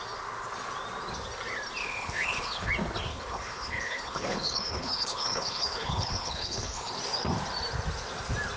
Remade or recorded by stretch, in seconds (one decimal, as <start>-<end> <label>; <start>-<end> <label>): 0.0-1.8 recorded; 1.8-2.7 remade; 2.7-3.1 recorded; 3.1-6.9 remade; 6.9-8.6 recorded